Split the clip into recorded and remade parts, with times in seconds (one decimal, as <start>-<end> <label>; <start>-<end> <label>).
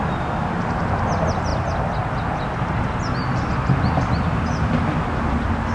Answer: 0.0-5.7 recorded